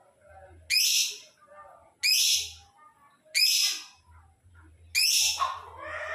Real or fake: real